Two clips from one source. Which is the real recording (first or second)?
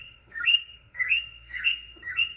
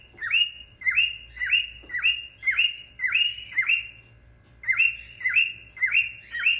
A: second